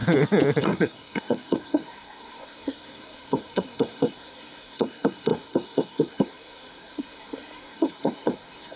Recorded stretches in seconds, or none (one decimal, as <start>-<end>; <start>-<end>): 0.0-0.6

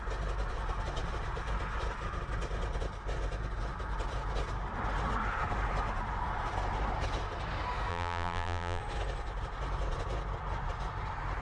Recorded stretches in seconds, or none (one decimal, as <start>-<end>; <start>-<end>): 0.0-7.9; 8.8-11.4

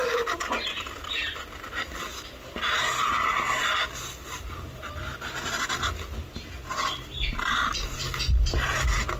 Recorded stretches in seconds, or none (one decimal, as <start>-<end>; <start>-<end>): 0.0-9.2

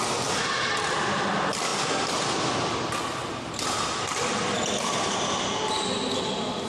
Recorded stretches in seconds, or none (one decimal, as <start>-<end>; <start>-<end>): 0.0-6.7